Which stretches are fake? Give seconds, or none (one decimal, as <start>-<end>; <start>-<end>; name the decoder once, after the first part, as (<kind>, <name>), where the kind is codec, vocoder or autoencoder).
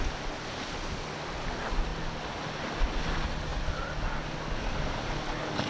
none